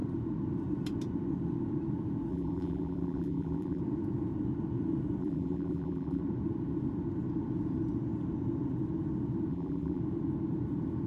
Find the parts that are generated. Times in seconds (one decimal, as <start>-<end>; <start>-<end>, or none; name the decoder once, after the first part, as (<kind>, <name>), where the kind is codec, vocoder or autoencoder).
2.3-3.8 (vocoder, BigVGAN v2); 5.2-6.2; 9.5-10.0